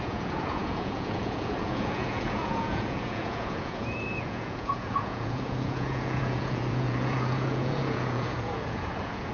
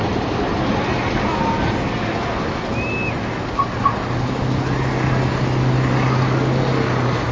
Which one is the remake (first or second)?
first